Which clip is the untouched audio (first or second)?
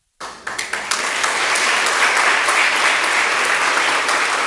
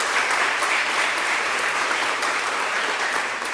first